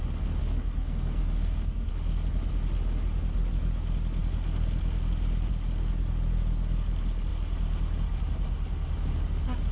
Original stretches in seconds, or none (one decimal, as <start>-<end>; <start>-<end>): 0.0-0.4; 1.9-9.7